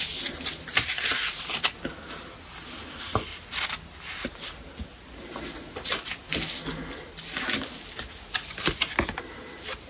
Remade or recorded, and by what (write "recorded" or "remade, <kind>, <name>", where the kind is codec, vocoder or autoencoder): recorded